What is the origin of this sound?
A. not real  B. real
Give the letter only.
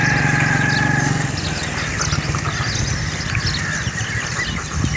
B